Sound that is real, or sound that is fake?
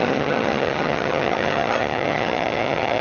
fake